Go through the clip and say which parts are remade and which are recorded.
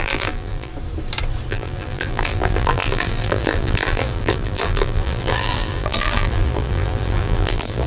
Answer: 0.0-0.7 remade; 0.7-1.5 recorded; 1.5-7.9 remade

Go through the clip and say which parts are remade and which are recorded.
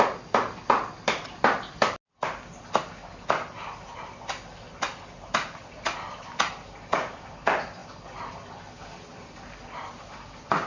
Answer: 0.0-10.7 recorded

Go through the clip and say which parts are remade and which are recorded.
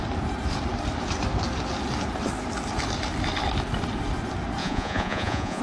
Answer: 0.0-4.6 recorded; 4.6-5.6 remade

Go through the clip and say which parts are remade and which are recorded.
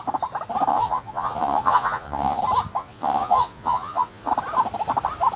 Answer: 0.0-0.7 recorded; 0.7-2.4 remade; 2.4-2.8 recorded; 2.8-4.3 remade; 4.3-5.4 recorded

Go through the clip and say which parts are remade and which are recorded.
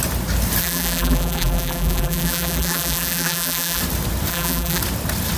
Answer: 0.0-0.6 recorded; 0.6-3.8 remade; 3.8-4.3 recorded; 4.3-4.8 remade; 4.8-5.4 recorded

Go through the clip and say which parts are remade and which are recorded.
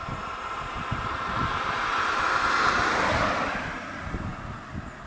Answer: 0.0-5.1 recorded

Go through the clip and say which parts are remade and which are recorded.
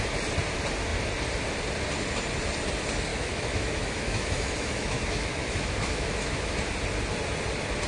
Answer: 0.0-3.1 recorded; 3.1-6.5 remade; 6.5-7.9 recorded